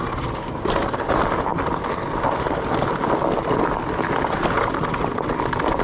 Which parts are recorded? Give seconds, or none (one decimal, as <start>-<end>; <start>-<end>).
0.0-5.8